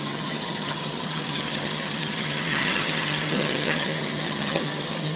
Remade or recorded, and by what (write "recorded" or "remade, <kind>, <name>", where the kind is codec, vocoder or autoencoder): remade, vocoder, HiFi-GAN